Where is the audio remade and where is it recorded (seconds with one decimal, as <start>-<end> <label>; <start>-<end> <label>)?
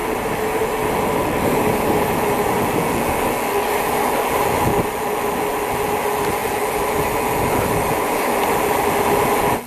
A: 0.0-9.7 recorded